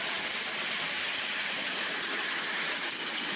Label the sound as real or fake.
real